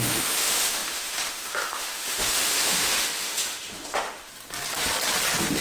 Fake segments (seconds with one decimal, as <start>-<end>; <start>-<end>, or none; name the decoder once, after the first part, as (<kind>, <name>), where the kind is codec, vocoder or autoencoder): 0.0-4.3 (autoencoder, DAC-VAE)